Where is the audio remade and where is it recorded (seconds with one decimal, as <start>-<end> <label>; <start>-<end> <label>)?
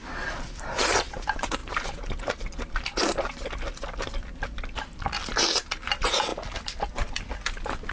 0.0-7.9 recorded